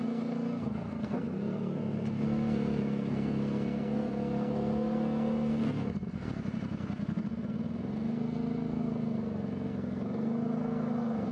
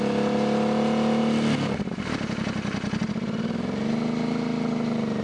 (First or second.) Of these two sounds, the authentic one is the second